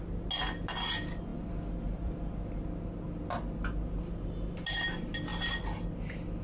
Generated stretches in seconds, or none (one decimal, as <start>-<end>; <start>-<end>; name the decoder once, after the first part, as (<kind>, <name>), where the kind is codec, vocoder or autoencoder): 1.3-4.1 (vocoder, BigVGAN v2); 5.3-6.4